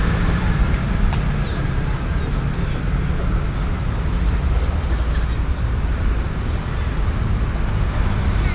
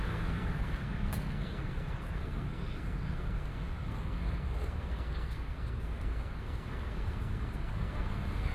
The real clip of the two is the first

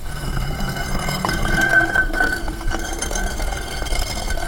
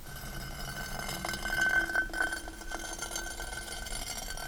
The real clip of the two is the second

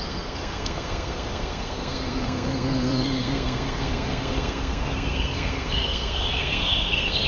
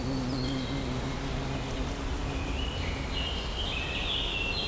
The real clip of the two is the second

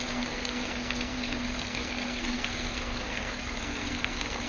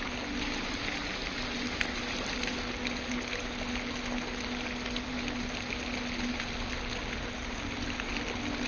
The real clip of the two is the second